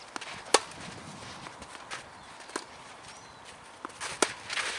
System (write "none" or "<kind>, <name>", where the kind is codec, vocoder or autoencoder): none